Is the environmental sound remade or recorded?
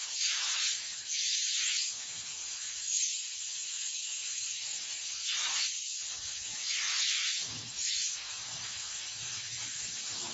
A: remade